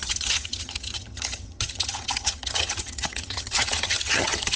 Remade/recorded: remade